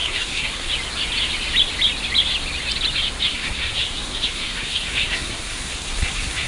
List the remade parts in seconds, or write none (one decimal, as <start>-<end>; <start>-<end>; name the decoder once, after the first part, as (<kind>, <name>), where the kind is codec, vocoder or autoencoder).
0.0-0.7 (codec, SNAC); 3.3-6.5